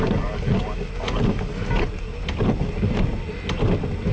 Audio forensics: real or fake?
real